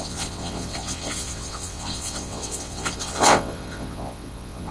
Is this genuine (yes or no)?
no